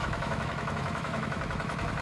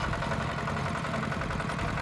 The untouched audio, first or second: second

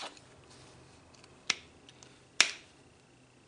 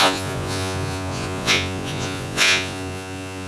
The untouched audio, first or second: first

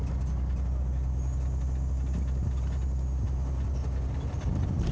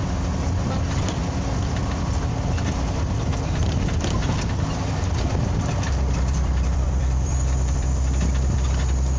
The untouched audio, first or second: first